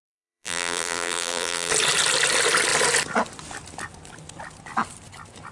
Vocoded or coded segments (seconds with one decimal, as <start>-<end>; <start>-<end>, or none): 0.0-1.7